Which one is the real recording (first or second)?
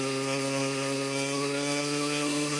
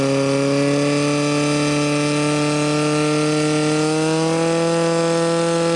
second